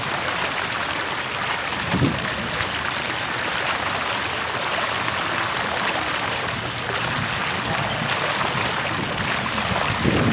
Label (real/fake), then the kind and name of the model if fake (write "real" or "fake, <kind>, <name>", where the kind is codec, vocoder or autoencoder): real